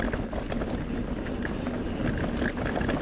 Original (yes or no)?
yes